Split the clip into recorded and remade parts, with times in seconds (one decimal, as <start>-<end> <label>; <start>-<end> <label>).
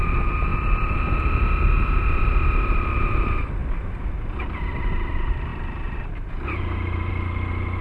0.0-7.8 recorded